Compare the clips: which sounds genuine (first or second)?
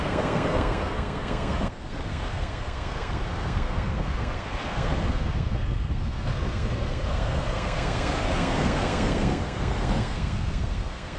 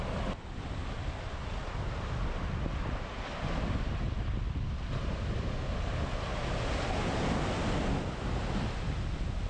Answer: second